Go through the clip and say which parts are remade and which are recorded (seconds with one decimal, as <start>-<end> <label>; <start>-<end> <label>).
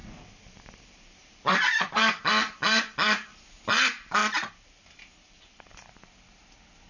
0.0-3.4 remade; 3.4-4.2 recorded; 4.2-5.7 remade; 5.7-6.9 recorded